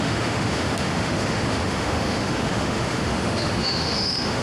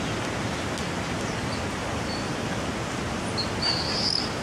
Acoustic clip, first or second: second